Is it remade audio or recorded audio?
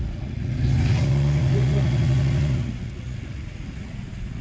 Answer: remade